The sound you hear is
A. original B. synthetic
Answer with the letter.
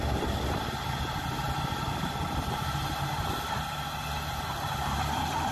A